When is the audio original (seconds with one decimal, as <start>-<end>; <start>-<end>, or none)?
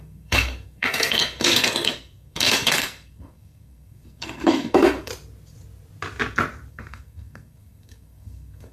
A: 5.1-6.7